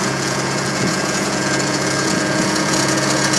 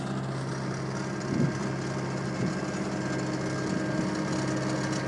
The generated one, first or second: first